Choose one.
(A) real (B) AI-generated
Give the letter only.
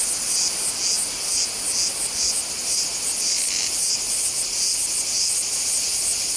A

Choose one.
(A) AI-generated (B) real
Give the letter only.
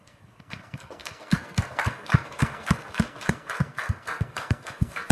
A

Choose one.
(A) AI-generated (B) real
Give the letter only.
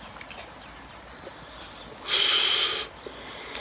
B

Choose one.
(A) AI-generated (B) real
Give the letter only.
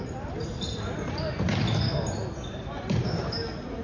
B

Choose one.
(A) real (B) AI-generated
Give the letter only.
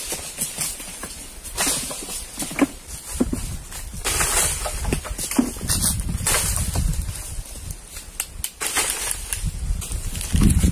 A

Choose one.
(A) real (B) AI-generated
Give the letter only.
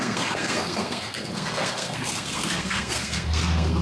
B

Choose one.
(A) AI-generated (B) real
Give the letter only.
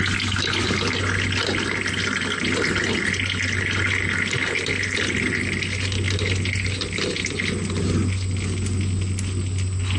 B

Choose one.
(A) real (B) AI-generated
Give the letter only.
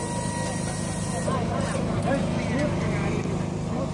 A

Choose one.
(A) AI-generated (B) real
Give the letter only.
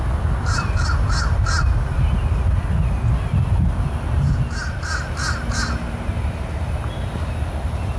B